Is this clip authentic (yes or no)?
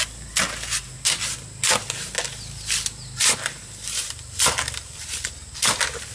yes